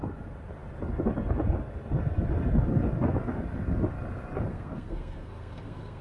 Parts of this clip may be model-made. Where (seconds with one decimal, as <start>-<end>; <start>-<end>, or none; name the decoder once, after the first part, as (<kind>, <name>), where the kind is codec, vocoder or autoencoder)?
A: 4.5-6.0 (codec, SNAC)